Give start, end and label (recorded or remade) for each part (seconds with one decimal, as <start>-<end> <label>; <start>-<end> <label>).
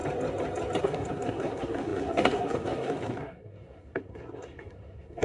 0.0-0.8 recorded; 0.8-5.2 remade